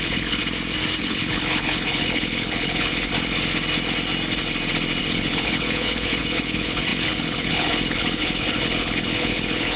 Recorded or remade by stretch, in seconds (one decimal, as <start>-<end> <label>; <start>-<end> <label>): 0.0-0.4 remade; 0.4-1.0 recorded; 1.0-3.1 remade; 3.1-5.0 recorded; 5.0-9.8 remade